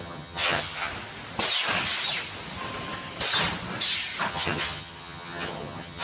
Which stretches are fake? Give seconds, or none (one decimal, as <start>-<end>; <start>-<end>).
0.0-0.9; 4.3-6.0